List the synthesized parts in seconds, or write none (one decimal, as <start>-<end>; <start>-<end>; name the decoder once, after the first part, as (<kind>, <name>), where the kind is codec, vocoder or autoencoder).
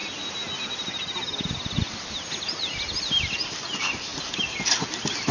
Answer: none